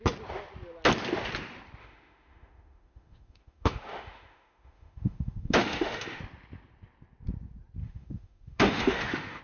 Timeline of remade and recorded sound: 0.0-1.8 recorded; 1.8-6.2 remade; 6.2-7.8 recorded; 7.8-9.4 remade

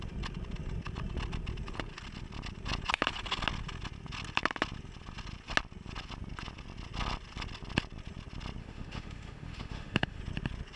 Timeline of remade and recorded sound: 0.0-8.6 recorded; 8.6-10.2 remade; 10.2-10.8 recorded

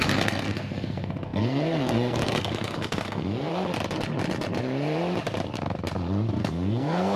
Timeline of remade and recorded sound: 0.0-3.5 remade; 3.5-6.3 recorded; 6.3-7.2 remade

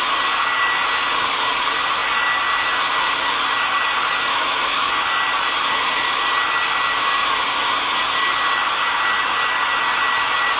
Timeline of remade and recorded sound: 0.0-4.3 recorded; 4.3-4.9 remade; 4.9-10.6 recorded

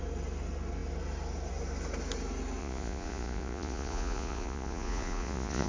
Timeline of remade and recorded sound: 0.0-2.6 recorded; 2.6-5.7 remade